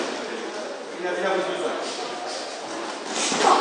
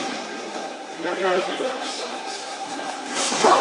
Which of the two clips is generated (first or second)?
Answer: second